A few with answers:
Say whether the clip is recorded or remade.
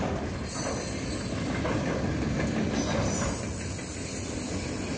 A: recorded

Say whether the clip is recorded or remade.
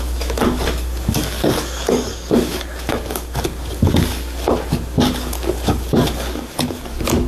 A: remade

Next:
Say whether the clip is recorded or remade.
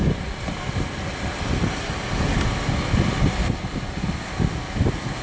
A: recorded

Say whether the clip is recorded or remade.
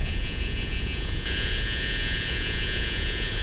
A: remade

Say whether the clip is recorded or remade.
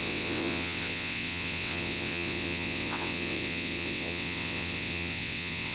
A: remade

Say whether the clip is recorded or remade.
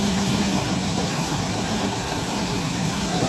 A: remade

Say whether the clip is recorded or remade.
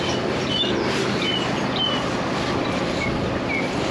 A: recorded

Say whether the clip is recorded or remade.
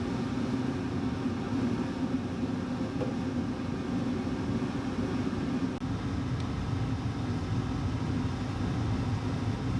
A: recorded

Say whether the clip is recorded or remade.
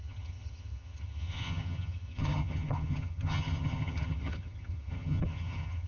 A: remade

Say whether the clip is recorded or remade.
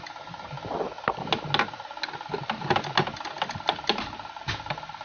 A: recorded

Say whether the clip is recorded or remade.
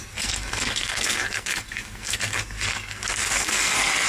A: remade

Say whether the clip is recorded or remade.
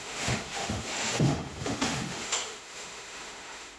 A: remade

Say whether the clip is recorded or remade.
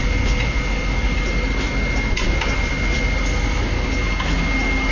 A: recorded